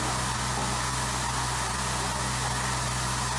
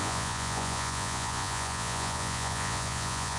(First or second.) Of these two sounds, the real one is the first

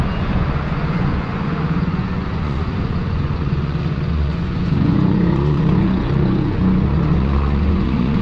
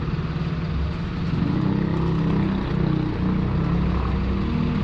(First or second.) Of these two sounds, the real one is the second